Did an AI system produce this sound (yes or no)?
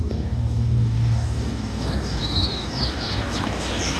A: yes